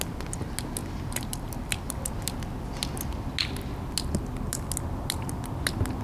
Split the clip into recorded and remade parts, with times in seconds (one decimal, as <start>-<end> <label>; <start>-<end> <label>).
0.0-0.8 recorded; 0.8-2.1 remade; 2.1-6.0 recorded